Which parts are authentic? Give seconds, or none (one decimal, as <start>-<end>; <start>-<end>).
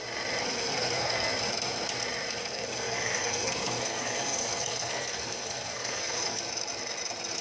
0.0-0.4; 1.3-2.4; 6.4-7.4